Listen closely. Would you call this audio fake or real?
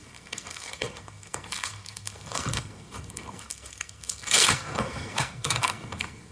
fake